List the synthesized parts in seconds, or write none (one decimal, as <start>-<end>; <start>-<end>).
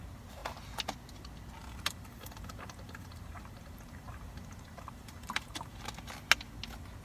1.6-5.8